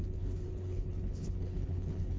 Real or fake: fake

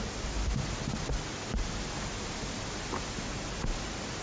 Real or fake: real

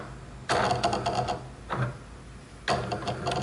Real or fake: real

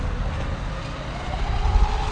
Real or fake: real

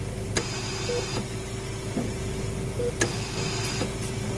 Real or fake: real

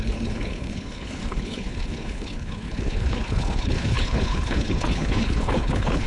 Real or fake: fake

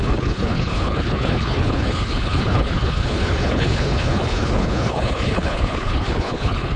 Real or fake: fake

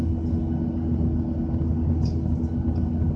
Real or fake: real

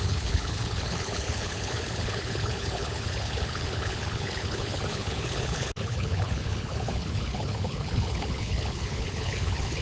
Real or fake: fake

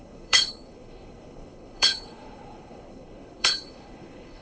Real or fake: fake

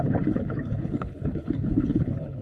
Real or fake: fake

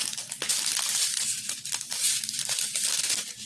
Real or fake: real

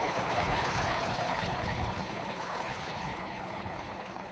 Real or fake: fake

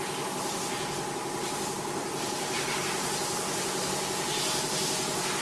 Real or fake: real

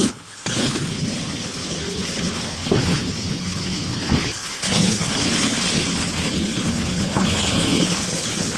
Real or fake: fake